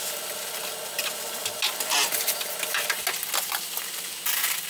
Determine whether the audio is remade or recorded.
recorded